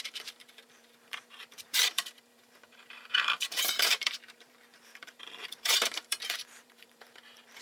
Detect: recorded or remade remade